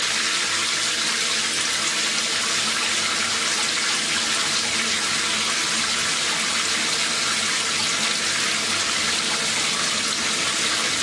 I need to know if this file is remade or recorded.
recorded